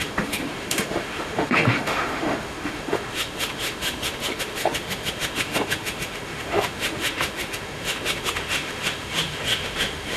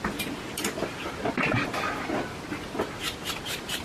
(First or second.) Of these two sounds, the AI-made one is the first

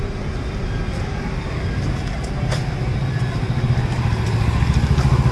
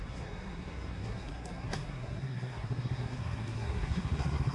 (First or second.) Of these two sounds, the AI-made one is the second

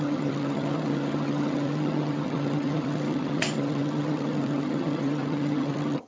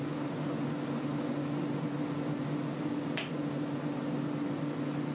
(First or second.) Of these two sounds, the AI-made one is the first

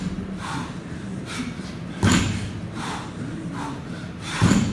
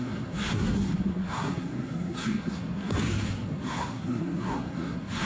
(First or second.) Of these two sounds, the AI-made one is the second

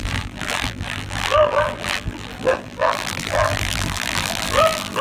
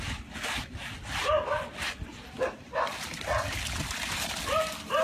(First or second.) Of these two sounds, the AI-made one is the first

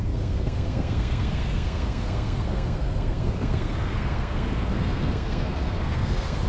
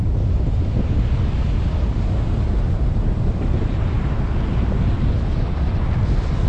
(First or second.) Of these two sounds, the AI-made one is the first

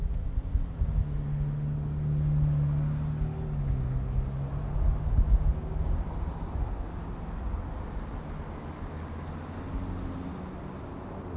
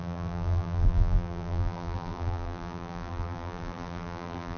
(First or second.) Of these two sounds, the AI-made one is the second